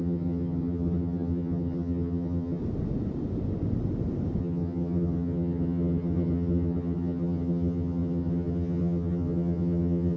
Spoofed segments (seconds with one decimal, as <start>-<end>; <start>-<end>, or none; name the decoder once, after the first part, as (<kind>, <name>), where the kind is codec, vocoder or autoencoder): 0.0-2.6 (vocoder, HiFi-GAN); 4.4-10.2